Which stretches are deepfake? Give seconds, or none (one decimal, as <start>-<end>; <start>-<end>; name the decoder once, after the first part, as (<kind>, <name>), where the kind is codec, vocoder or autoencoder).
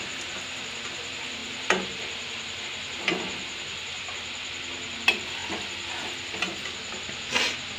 1.4-2.6 (vocoder, BigVGAN v2)